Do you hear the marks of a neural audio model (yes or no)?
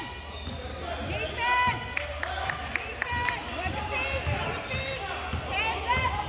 no